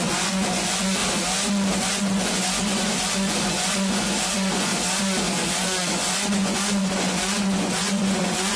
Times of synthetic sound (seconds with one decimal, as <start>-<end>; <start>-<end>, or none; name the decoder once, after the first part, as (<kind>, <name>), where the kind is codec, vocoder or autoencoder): 0.0-1.0 (vocoder, Vocos); 1.7-4.7; 5.2-8.6